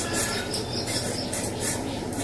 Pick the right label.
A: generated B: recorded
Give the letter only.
A